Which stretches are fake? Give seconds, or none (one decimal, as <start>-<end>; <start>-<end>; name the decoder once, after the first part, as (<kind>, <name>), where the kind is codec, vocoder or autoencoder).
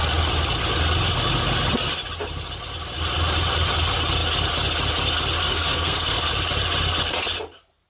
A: 5.4-6.3 (codec, SNAC)